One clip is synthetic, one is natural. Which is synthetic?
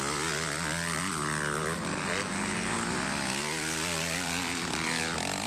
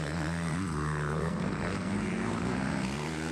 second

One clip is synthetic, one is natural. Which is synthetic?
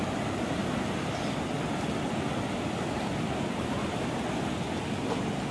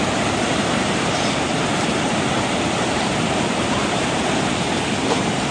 second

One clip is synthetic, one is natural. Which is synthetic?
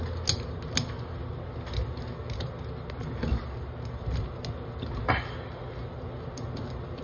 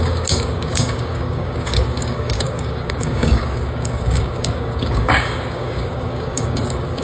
second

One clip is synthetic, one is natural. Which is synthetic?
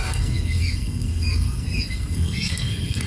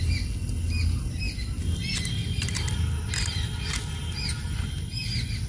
first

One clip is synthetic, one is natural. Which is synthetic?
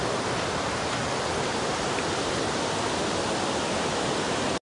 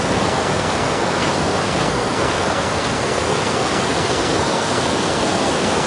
second